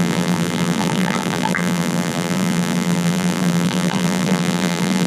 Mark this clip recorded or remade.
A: remade